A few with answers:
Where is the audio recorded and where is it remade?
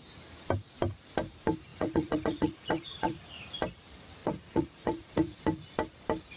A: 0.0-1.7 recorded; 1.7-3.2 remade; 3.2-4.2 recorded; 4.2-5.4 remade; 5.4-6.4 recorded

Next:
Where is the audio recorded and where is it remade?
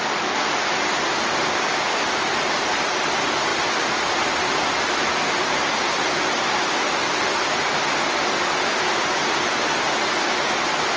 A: 0.0-11.0 recorded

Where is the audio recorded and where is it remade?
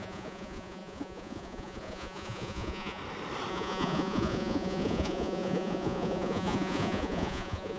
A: 0.0-3.0 remade; 3.0-3.5 recorded; 3.5-7.8 remade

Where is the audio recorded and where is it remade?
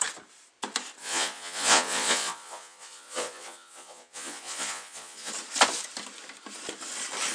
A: 0.0-1.0 recorded; 1.0-5.3 remade; 5.3-7.3 recorded